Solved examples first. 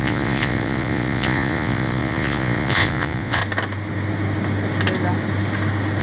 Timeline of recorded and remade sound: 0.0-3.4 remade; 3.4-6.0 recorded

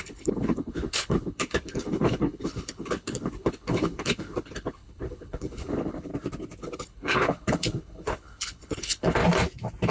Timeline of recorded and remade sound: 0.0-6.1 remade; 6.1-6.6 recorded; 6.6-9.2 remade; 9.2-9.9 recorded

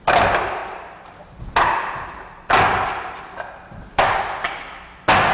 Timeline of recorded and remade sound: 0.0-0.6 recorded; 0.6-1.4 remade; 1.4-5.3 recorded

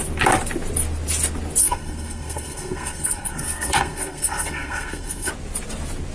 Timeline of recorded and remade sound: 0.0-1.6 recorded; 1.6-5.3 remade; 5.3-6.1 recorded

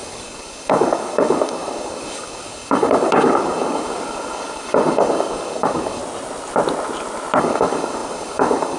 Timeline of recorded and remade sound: 0.0-6.0 remade; 6.0-7.4 recorded; 7.4-8.8 remade